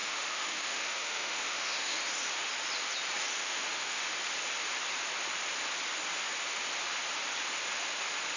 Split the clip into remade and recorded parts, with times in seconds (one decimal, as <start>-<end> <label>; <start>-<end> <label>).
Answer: 0.0-2.0 remade; 2.0-3.4 recorded; 3.4-4.0 remade; 4.0-8.4 recorded